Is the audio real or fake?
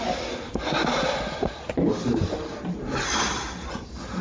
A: real